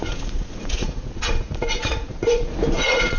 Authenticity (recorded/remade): remade